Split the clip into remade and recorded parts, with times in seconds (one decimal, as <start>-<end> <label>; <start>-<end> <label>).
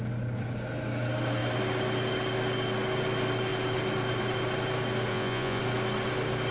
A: 0.0-5.1 recorded; 5.1-5.6 remade; 5.6-6.5 recorded